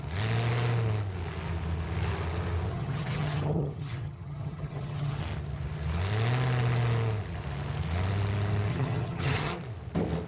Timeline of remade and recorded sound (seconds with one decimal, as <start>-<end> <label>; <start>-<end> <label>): 0.0-2.7 recorded; 2.7-5.2 remade; 5.2-8.7 recorded; 8.7-9.5 remade; 9.5-10.3 recorded